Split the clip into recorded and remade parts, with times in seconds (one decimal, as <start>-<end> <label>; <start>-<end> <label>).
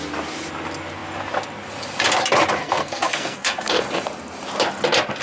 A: 0.0-2.6 recorded; 2.6-3.8 remade; 3.8-5.2 recorded